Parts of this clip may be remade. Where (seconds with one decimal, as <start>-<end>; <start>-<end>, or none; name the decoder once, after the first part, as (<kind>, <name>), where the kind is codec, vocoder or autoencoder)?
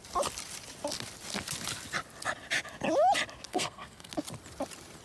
3.5-4.1 (codec, SNAC)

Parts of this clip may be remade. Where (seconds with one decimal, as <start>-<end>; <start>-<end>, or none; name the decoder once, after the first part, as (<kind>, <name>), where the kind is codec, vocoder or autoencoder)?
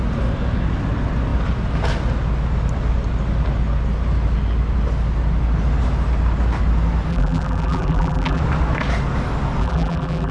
7.1-8.4 (vocoder, BigVGAN v2); 9.6-10.3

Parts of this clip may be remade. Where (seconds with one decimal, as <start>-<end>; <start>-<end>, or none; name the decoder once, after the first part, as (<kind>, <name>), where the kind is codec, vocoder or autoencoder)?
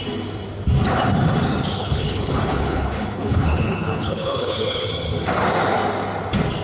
1.8-4.9 (codec, HILCodec)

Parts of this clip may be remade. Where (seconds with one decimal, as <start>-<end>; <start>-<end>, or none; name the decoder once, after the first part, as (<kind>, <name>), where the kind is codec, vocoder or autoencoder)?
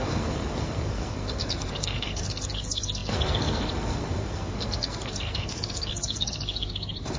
0.0-7.2 (codec, SNAC)